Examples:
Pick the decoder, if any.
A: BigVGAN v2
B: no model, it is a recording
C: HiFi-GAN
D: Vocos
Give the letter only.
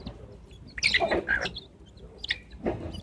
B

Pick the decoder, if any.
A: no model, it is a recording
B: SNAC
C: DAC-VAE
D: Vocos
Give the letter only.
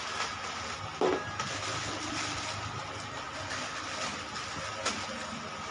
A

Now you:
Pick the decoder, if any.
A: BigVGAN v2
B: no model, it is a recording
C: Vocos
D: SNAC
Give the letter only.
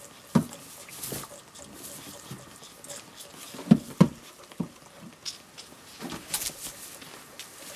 B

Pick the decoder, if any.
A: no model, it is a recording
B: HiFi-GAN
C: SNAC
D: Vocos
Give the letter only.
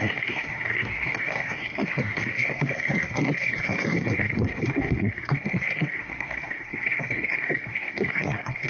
C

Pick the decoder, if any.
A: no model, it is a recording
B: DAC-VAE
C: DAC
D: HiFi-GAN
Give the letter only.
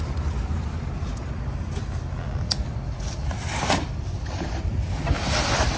A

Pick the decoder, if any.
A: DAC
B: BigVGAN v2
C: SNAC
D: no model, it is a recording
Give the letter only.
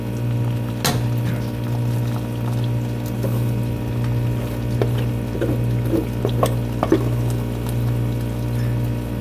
D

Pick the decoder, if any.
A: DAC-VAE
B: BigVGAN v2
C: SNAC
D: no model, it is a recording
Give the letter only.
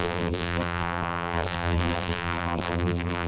B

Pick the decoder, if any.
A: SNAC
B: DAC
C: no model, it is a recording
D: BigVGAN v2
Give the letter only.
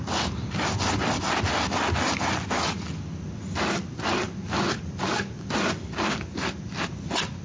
C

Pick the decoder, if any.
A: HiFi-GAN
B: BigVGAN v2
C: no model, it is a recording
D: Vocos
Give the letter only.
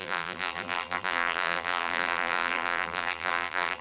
B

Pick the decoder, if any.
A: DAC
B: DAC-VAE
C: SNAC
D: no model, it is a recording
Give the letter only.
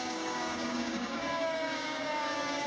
A